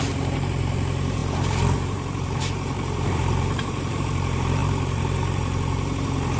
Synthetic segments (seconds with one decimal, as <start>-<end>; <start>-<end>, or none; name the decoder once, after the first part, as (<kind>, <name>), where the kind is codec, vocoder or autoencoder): 0.0-6.4 (vocoder, BigVGAN v2)